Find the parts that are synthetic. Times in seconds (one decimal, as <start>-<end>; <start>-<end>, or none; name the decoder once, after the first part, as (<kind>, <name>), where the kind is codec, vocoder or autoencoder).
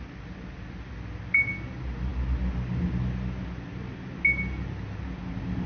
none